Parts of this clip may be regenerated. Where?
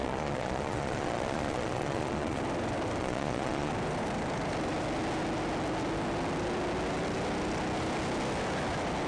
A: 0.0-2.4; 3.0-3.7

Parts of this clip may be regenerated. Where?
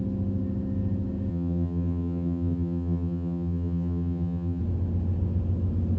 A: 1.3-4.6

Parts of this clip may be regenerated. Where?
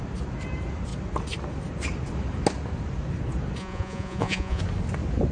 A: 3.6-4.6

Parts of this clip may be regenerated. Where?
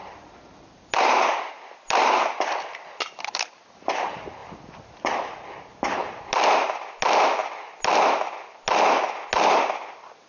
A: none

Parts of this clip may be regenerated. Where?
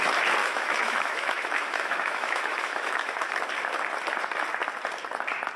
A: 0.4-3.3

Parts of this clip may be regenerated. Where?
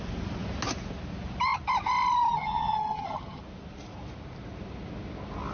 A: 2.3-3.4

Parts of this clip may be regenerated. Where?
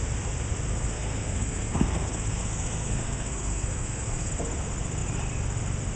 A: 0.7-4.3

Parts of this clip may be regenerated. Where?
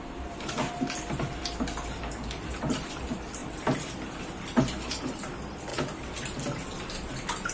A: 0.0-5.7; 6.7-7.5